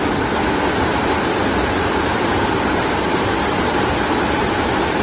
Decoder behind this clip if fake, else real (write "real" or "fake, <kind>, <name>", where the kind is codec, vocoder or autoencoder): real